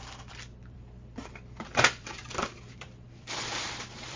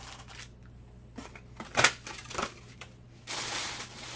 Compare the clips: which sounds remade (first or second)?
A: first